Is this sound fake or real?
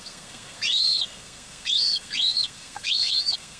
fake